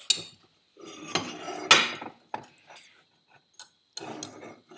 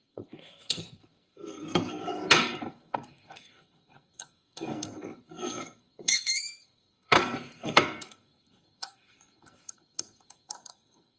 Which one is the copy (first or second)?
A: second